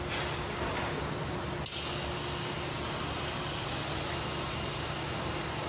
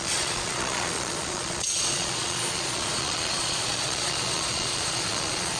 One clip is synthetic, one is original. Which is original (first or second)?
first